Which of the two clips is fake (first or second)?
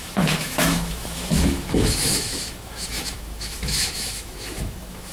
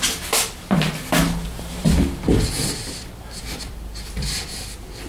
first